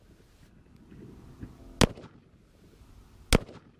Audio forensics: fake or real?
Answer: real